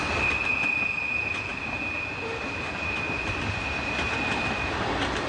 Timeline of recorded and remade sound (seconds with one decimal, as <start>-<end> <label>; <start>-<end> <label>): 0.0-5.3 recorded